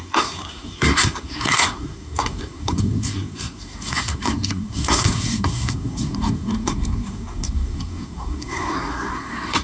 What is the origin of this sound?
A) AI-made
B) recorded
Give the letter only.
A